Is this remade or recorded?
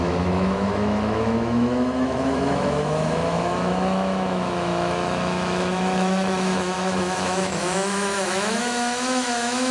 remade